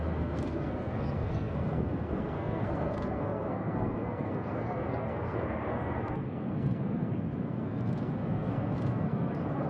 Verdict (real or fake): fake